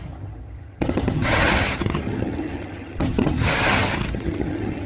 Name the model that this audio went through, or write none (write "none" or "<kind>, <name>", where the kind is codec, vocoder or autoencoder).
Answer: vocoder, HiFi-GAN